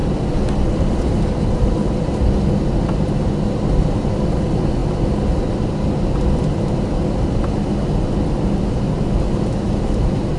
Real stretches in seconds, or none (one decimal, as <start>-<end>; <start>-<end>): 0.0-10.4